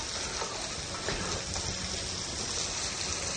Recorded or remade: recorded